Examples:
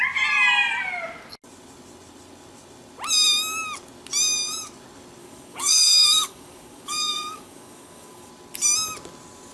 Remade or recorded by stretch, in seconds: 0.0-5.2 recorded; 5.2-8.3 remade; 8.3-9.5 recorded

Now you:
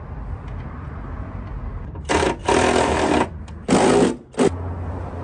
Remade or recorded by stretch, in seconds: 0.0-2.4 recorded; 2.4-3.9 remade; 3.9-5.2 recorded

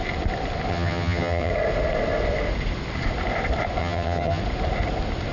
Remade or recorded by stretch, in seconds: 0.0-0.7 recorded; 0.7-1.5 remade; 1.5-3.8 recorded; 3.8-4.4 remade; 4.4-5.3 recorded

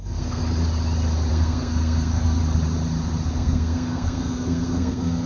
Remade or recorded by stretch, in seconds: 0.0-0.4 remade; 0.4-1.3 recorded; 1.3-2.4 remade; 2.4-3.3 recorded; 3.3-5.3 remade

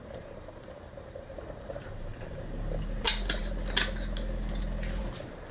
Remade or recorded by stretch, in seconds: 0.0-3.4 remade; 3.4-5.0 recorded; 5.0-5.5 remade